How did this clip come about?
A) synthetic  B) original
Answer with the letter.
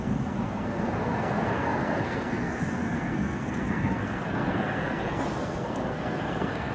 A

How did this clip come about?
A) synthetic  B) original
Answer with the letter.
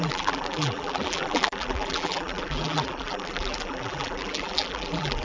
A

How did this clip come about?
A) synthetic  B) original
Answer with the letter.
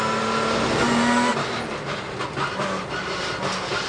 B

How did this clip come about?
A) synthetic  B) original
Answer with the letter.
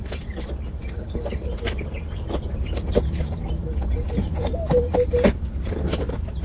A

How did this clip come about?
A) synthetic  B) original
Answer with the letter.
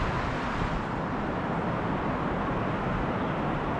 B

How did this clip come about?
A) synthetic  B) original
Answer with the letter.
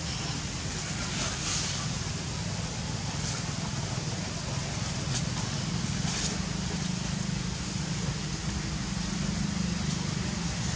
B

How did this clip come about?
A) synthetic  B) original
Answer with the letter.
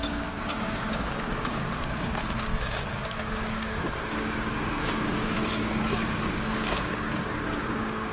A